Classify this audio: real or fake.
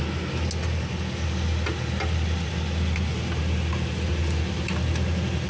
real